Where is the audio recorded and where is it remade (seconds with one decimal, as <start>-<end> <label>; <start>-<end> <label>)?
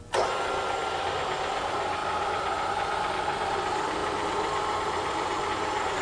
0.0-6.0 recorded